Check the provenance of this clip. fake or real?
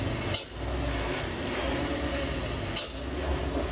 real